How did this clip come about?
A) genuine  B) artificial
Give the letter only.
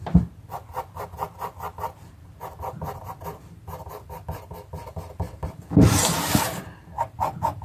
B